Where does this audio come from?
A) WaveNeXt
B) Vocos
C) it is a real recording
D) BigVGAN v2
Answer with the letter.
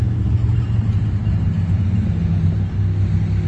C